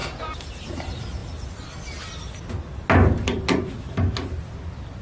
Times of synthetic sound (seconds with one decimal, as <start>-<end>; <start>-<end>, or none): none